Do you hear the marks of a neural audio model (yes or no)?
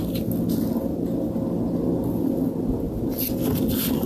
no